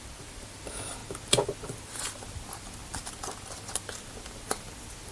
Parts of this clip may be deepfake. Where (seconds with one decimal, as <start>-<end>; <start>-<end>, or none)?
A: none